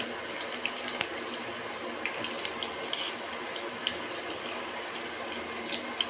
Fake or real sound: real